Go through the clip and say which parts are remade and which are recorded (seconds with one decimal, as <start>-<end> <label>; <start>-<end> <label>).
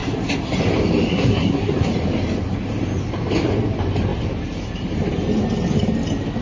0.0-1.1 recorded; 1.1-1.9 remade; 1.9-6.4 recorded